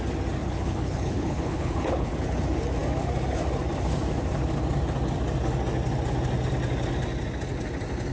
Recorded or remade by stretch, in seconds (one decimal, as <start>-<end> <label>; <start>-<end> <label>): 0.0-0.4 recorded; 0.4-2.1 remade; 2.1-8.1 recorded